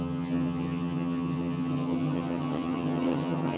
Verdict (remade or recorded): remade